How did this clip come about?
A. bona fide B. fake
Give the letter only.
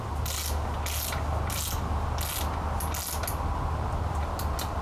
A